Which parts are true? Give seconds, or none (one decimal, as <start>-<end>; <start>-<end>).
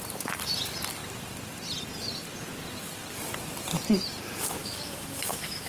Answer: 0.0-4.6